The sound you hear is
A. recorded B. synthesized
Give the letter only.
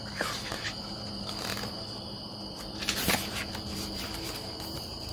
B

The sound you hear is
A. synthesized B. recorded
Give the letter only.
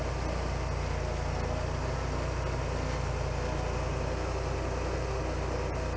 B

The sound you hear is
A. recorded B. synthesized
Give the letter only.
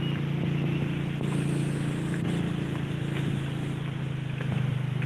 A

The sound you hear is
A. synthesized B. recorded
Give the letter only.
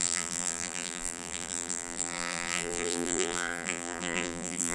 A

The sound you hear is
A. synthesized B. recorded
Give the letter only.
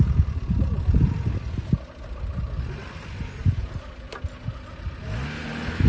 B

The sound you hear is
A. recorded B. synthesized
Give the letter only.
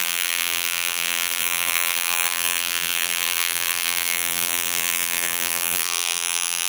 B